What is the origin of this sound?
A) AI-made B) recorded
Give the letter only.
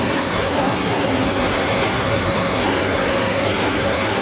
A